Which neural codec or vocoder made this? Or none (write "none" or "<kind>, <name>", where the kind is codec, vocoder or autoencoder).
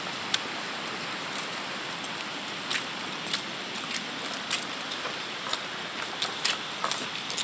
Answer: none